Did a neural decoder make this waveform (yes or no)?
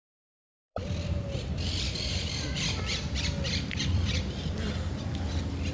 yes